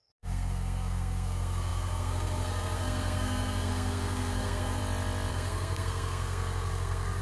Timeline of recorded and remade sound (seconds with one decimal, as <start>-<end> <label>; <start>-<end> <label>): 0.0-4.8 remade; 4.8-5.3 recorded; 5.3-7.2 remade